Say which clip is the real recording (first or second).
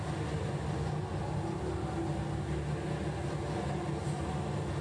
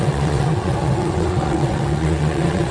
first